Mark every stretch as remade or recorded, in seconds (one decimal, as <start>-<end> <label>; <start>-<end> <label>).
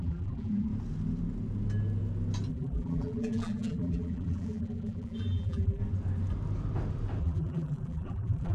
0.0-0.7 remade; 0.7-2.5 recorded; 2.5-5.8 remade; 5.8-7.2 recorded; 7.2-8.5 remade